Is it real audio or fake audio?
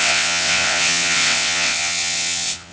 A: fake